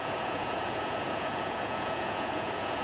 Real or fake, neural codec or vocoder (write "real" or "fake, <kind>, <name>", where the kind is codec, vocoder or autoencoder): fake, vocoder, Vocos